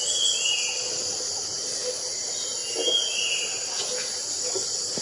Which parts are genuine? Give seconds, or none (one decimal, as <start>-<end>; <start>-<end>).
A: 0.0-5.0